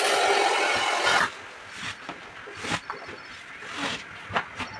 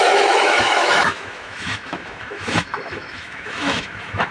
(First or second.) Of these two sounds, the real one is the first